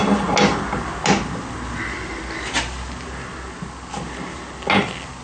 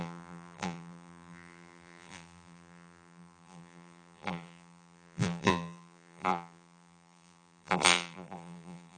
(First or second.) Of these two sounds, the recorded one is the first